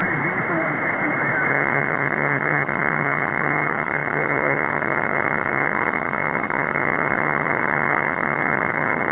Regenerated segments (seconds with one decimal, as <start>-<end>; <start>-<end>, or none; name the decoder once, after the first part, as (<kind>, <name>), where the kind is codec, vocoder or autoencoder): 1.5-9.1 (vocoder, HiFi-GAN)